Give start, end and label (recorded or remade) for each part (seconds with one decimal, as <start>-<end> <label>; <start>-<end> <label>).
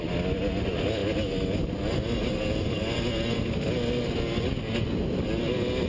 0.0-5.9 recorded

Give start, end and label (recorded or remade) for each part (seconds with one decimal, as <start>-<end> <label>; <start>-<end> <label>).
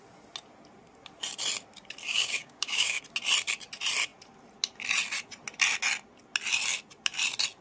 0.0-2.0 recorded; 2.0-3.0 remade; 3.0-7.6 recorded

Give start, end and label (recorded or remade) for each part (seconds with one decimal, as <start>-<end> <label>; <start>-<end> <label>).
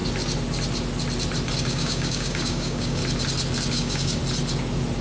0.0-1.6 recorded; 1.6-3.0 remade; 3.0-3.7 recorded; 3.7-4.2 remade; 4.2-5.0 recorded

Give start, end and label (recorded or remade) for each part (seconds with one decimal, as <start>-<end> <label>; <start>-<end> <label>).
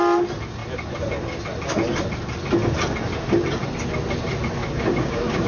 0.0-4.6 recorded; 4.6-5.5 remade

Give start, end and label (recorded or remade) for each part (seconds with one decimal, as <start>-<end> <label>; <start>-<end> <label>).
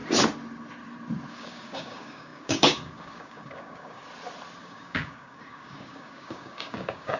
0.0-1.3 recorded; 1.3-4.0 remade; 4.0-4.6 recorded; 4.6-7.2 remade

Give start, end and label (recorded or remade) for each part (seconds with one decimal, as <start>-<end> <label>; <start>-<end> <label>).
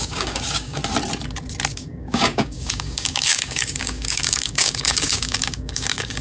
0.0-0.8 remade; 0.8-1.7 recorded; 1.7-6.2 remade